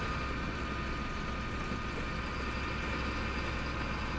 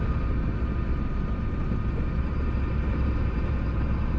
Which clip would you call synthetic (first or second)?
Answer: second